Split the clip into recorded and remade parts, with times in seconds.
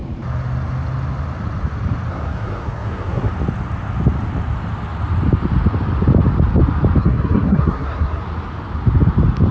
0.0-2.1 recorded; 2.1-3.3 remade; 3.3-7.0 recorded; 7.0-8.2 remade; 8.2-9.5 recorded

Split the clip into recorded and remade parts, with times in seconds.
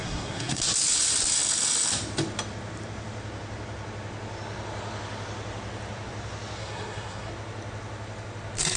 0.0-0.6 remade; 0.6-6.6 recorded; 6.6-7.3 remade; 7.3-8.8 recorded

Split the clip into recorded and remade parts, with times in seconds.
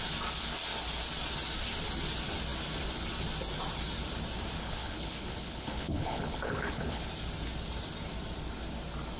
0.0-4.6 recorded; 4.6-7.1 remade; 7.1-9.2 recorded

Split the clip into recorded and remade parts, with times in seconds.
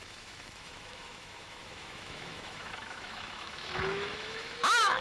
0.0-5.0 remade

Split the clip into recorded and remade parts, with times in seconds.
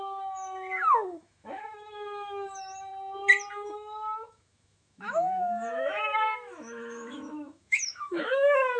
0.0-2.9 remade; 2.9-3.5 recorded; 3.5-8.8 remade